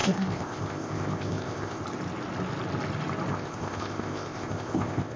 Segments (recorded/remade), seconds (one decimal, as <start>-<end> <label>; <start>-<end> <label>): 0.0-1.8 remade; 1.8-3.3 recorded; 3.3-5.2 remade